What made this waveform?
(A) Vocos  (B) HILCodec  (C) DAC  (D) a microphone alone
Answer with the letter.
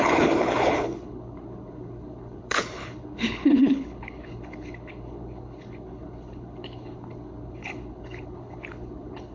B